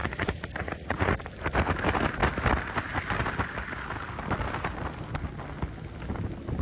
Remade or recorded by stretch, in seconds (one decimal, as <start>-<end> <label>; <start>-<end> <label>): 0.0-1.2 remade; 1.2-6.6 recorded